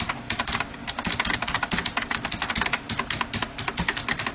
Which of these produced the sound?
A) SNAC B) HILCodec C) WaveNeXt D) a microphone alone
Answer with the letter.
D